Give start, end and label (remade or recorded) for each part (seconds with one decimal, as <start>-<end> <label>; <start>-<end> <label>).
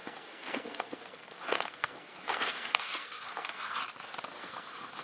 0.0-3.8 remade; 3.8-4.4 recorded; 4.4-5.0 remade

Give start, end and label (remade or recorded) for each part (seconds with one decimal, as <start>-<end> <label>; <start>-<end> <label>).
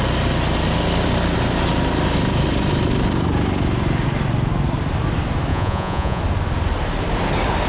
0.0-5.5 recorded; 5.5-6.2 remade; 6.2-7.7 recorded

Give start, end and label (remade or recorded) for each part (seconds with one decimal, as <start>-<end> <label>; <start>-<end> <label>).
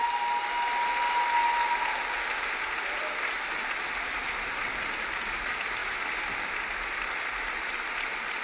0.0-8.4 recorded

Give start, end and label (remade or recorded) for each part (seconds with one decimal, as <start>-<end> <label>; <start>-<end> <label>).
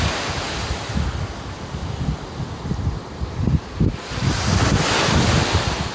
0.0-5.9 recorded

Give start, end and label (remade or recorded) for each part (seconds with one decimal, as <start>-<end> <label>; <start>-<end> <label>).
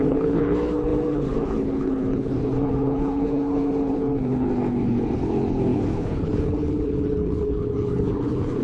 0.0-8.6 remade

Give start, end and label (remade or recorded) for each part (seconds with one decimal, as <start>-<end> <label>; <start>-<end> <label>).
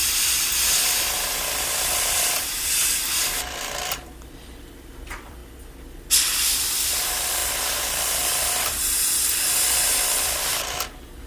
0.0-1.6 recorded; 1.6-5.4 remade; 5.4-6.1 recorded; 6.1-11.3 remade